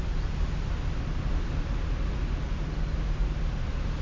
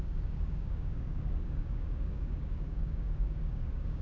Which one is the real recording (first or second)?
first